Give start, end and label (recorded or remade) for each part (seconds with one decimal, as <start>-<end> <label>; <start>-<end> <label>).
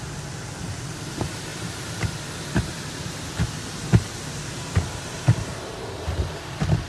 0.0-6.9 recorded